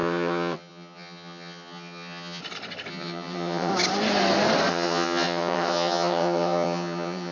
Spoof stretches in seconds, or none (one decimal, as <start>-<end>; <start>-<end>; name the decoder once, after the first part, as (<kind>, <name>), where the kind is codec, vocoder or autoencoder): 0.0-2.4 (vocoder, HiFi-GAN); 2.9-3.7; 4.7-7.3